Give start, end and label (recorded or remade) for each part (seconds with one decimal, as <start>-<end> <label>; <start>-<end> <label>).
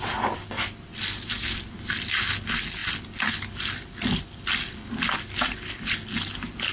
0.0-6.7 recorded